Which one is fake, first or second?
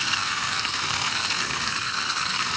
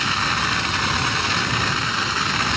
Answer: first